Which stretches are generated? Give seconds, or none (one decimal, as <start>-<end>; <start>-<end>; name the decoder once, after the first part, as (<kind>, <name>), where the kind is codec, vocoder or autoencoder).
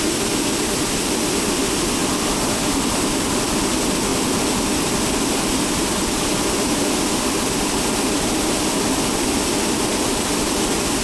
none